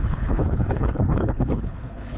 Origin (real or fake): fake